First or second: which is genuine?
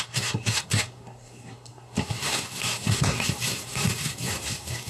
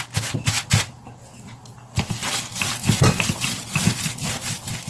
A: second